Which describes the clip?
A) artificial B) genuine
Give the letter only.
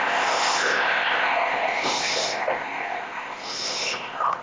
A